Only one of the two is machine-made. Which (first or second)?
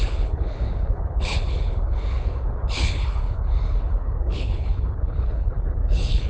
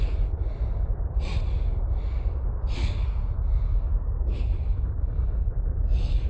first